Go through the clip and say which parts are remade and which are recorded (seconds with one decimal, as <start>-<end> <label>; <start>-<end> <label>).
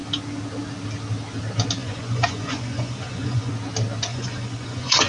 0.0-1.8 recorded; 1.8-3.5 remade; 3.5-4.1 recorded; 4.1-5.1 remade